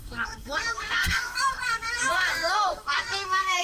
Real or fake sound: fake